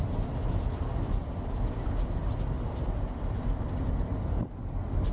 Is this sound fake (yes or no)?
no